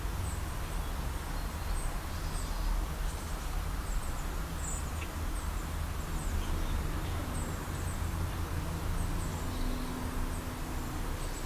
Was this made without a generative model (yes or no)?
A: yes